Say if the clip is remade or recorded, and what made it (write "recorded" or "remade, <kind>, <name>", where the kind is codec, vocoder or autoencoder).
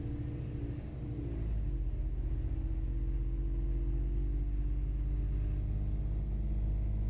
recorded